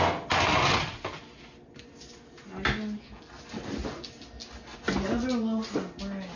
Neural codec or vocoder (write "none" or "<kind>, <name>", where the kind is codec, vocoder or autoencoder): none